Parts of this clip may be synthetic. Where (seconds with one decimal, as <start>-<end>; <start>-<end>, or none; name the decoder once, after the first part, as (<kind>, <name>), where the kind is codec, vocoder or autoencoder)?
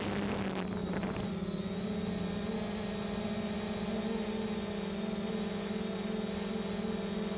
0.8-1.3 (vocoder, BigVGAN v2)